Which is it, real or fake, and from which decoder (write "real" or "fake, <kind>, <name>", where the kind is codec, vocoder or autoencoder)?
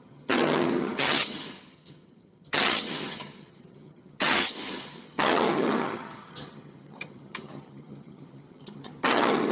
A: fake, vocoder, HiFi-GAN